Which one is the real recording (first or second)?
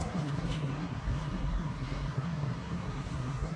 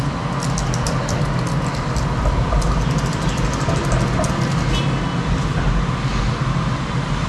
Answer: second